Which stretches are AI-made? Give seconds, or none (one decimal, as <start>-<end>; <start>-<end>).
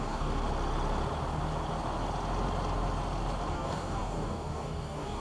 0.0-0.4; 3.5-5.2